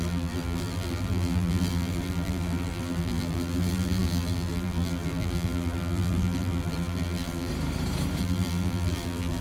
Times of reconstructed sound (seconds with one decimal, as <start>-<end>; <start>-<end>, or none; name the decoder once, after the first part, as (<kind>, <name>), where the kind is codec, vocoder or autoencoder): 0.0-7.5 (vocoder, BigVGAN v2); 8.2-9.4